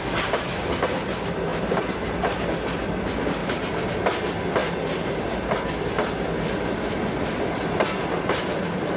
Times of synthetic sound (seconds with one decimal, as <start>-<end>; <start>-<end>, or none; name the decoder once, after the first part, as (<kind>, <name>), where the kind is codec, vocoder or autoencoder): 3.4-4.0 (vocoder, BigVGAN v2)